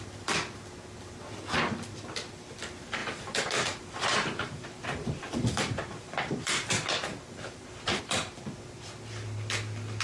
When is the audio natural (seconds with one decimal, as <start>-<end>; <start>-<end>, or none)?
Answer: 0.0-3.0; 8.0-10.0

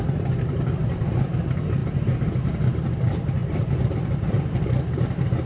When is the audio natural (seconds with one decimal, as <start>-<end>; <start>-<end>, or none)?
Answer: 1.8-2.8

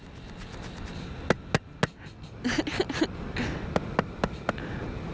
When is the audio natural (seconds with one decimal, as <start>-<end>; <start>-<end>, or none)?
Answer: 0.0-5.1